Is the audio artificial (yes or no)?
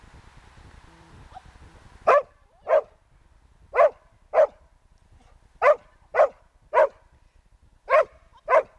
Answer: no